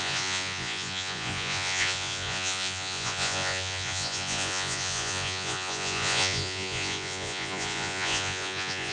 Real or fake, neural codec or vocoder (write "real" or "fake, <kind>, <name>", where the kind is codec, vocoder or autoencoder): fake, vocoder, Vocos